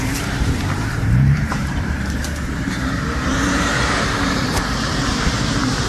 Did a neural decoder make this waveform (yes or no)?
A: yes